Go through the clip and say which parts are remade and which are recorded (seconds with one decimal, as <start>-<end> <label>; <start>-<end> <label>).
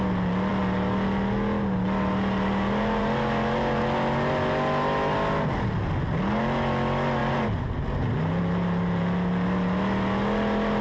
0.0-10.8 recorded